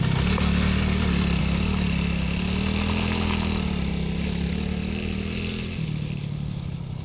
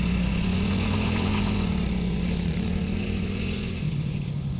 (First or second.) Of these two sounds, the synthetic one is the second